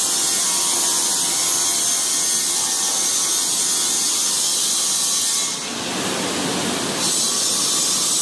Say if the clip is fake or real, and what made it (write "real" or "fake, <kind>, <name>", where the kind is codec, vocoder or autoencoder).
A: real